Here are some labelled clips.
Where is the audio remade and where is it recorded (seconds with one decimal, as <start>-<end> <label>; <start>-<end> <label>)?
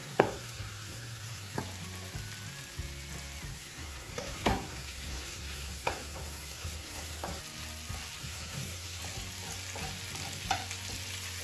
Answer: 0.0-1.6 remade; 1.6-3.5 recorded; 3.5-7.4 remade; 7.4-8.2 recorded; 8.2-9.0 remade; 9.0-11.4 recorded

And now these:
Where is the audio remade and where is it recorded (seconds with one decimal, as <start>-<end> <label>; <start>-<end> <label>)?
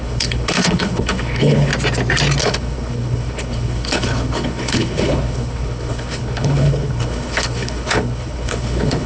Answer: 0.0-1.7 remade; 1.7-2.4 recorded; 2.4-9.1 remade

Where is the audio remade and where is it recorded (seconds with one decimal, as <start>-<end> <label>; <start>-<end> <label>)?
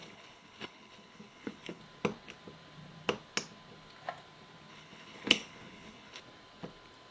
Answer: 0.0-1.8 remade; 1.8-4.7 recorded; 4.7-6.2 remade; 6.2-7.1 recorded